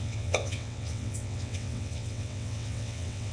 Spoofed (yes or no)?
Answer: yes